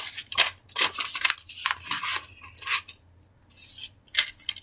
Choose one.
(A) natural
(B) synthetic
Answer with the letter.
A